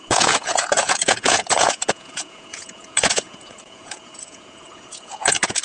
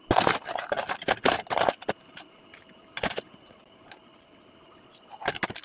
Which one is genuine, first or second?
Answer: second